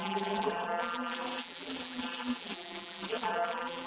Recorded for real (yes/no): no